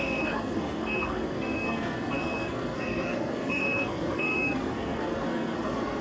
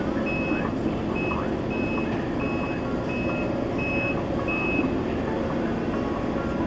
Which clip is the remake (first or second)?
first